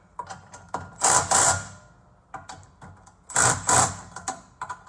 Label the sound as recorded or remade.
recorded